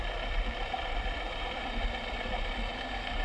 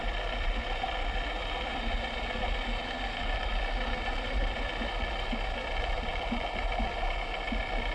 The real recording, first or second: second